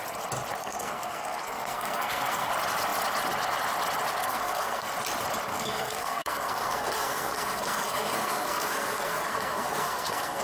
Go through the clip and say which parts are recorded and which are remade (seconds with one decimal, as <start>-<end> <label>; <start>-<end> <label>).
0.0-0.6 recorded; 0.6-2.5 remade; 2.5-4.2 recorded; 4.2-4.9 remade; 4.9-5.5 recorded; 5.5-10.4 remade